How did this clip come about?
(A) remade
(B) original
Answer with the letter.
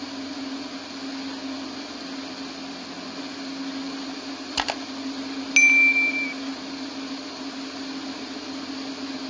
B